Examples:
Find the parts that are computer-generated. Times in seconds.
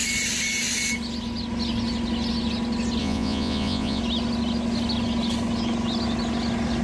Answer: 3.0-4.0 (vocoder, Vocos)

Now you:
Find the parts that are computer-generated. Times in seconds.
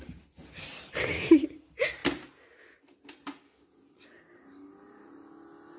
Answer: 0.0-2.0 (vocoder, BigVGAN v2)